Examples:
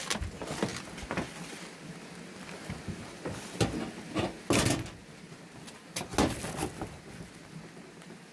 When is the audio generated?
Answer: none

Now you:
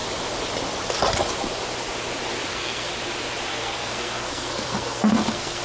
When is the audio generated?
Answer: 2.5-2.9; 3.5-5.6

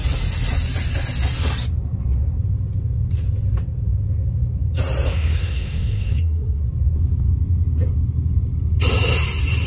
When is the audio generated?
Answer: 5.1-6.6

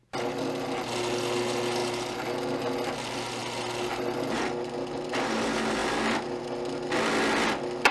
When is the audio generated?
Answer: none

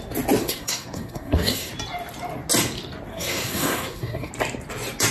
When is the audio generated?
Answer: 0.4-1.7; 3.1-4.3